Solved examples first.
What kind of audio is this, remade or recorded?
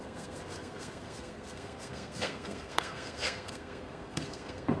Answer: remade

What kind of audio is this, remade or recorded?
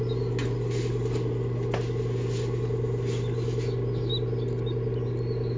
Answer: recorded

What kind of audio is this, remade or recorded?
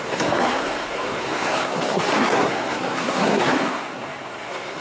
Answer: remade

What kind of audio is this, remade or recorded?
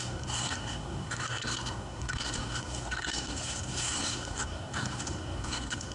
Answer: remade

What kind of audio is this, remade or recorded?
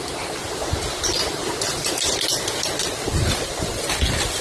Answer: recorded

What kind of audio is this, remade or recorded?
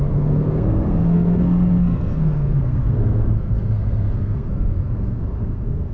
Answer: remade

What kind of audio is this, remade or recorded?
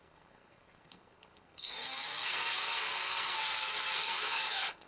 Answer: remade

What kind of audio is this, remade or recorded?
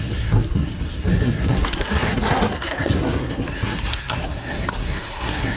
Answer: remade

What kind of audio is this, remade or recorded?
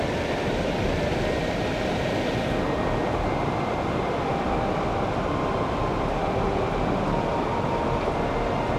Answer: recorded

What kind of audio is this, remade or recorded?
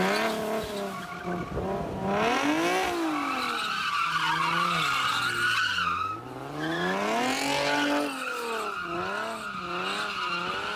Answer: recorded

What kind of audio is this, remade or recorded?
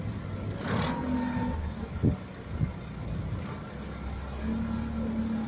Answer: recorded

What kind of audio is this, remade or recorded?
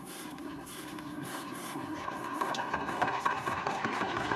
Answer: remade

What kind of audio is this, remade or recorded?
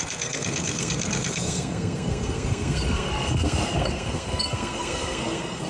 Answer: remade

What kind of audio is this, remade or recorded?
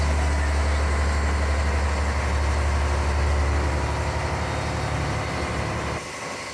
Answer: recorded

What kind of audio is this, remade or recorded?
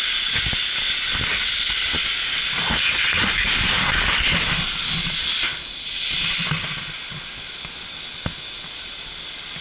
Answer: recorded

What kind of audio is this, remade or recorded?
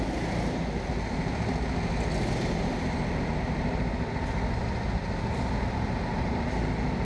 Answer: recorded